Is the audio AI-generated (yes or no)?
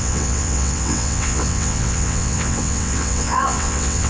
yes